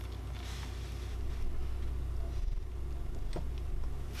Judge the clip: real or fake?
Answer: real